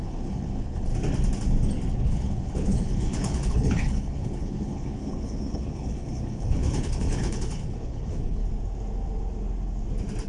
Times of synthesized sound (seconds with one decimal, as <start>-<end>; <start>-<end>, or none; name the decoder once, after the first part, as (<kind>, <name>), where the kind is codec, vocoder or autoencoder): 0.0-0.9 (codec, HILCodec); 1.9-8.4